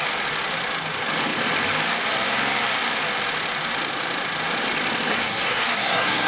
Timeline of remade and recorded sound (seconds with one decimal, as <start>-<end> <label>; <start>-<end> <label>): 0.0-5.1 recorded; 5.1-6.3 remade